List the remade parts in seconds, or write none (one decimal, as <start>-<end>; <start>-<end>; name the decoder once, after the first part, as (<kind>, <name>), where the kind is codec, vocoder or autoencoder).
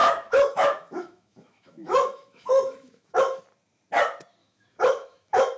0.0-3.4 (autoencoder, DAC-VAE); 4.4-5.6